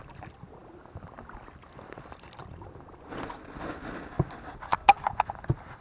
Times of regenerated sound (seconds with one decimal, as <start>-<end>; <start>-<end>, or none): none